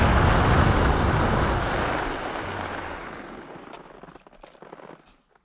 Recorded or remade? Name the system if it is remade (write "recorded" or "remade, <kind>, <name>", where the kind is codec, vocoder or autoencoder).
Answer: recorded